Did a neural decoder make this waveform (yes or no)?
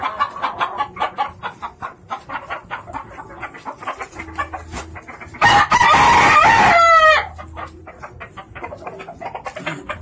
no